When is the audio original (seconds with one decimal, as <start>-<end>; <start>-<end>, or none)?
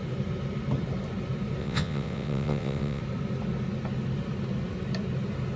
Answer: 0.0-1.6; 3.0-5.6